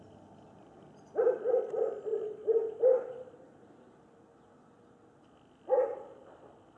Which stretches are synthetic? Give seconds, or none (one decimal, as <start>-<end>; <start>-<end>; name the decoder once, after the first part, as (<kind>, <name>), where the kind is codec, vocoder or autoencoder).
none